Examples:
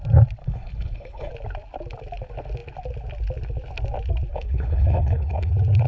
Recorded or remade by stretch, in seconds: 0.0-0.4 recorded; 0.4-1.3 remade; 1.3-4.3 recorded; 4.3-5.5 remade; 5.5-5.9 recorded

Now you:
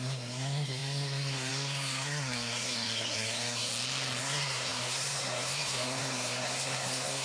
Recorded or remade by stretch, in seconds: 0.0-3.7 remade; 3.7-4.2 recorded; 4.2-7.2 remade